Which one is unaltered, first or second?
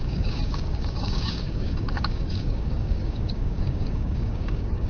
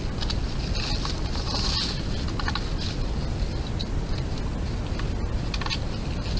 second